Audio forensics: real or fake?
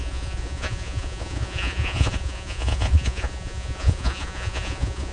fake